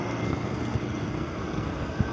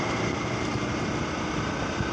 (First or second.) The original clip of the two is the second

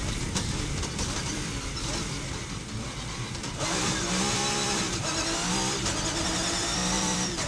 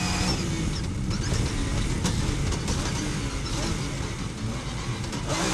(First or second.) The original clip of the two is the second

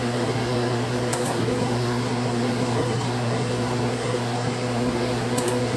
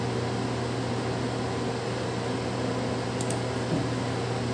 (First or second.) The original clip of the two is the second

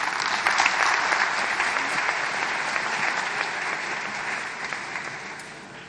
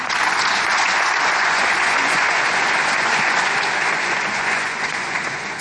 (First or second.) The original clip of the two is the first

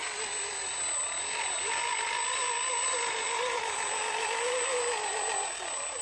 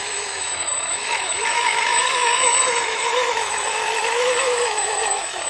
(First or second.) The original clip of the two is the first